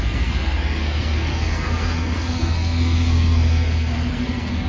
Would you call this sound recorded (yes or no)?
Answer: no